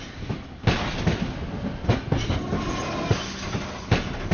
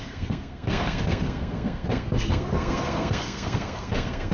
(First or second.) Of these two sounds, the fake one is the second